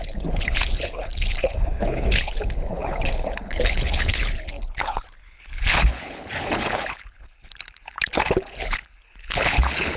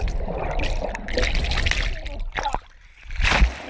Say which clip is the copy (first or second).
first